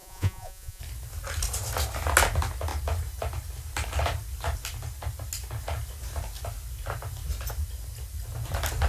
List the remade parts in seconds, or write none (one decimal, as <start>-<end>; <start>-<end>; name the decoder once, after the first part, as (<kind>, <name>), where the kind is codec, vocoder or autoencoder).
0.0-0.8 (vocoder, Vocos)